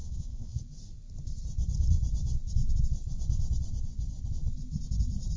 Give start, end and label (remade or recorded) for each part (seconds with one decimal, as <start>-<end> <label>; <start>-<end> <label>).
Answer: 0.0-0.6 remade; 0.6-5.4 recorded

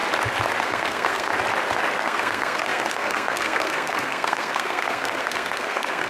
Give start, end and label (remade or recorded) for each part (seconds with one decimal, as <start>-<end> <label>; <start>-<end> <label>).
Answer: 0.0-0.6 recorded; 0.6-1.3 remade; 1.3-2.0 recorded; 2.0-6.1 remade

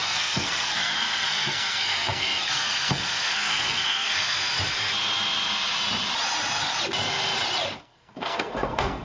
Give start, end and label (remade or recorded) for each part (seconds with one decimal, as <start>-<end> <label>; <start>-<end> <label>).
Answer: 0.0-4.5 remade; 4.5-7.8 recorded; 7.8-9.0 remade

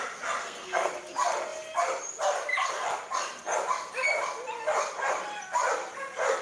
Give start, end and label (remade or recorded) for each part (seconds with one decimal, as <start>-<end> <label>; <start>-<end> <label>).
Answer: 0.0-0.4 recorded; 0.4-0.9 remade; 0.9-6.4 recorded

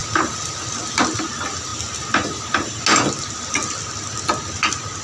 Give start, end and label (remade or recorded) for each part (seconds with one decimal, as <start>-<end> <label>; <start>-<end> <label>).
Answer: 0.0-5.0 recorded

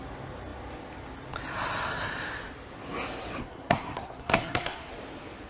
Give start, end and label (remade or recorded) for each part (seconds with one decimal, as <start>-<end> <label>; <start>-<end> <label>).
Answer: 0.0-3.4 recorded; 3.4-4.9 remade; 4.9-5.5 recorded

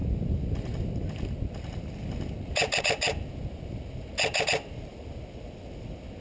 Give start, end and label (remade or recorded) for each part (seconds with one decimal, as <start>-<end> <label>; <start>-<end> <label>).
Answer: 0.0-6.2 recorded

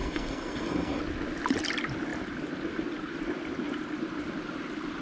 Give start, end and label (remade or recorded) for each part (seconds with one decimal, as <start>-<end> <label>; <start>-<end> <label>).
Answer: 0.0-1.0 remade; 1.0-5.0 recorded